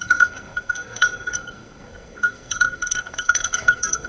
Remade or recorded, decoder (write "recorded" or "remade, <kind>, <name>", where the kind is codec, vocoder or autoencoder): remade, codec, SNAC